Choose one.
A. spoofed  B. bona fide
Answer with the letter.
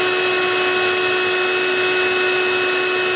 B